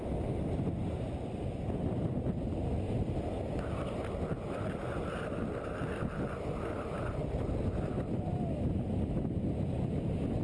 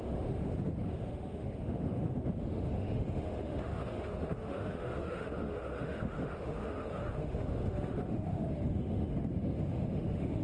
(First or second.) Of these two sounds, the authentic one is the first